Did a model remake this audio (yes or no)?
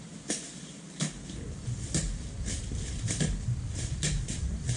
no